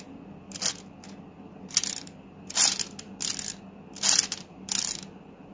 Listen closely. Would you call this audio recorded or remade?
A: recorded